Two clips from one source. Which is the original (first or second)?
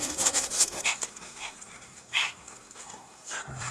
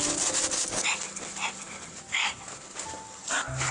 second